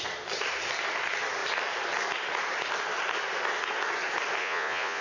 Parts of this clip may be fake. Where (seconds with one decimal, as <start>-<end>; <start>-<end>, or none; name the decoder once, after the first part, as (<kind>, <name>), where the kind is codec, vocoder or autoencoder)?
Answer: 4.4-5.0 (vocoder, Vocos)